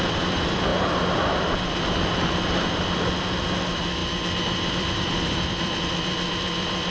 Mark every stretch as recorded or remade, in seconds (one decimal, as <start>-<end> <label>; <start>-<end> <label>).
0.0-0.7 remade; 0.7-3.2 recorded; 3.2-4.0 remade; 4.0-4.7 recorded; 4.7-6.9 remade